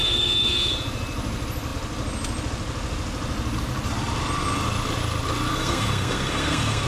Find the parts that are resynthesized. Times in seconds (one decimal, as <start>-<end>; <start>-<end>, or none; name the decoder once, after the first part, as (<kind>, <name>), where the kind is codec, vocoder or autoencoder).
0.0-0.7 (codec, SNAC); 5.5-6.9